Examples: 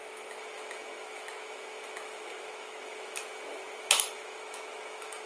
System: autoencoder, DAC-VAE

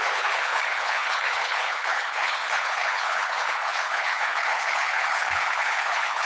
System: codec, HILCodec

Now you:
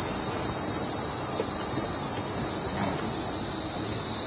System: none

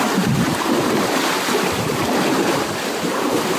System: vocoder, BigVGAN v2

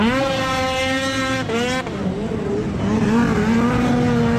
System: none